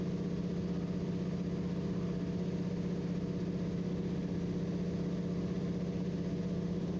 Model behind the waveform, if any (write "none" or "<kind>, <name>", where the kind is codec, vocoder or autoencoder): none